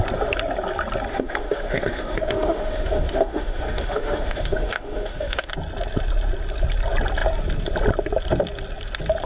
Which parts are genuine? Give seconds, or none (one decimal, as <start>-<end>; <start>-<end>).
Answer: 0.0-1.1; 5.5-9.3